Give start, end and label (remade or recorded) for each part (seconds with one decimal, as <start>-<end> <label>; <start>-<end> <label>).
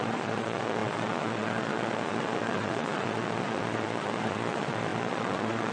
0.0-5.7 remade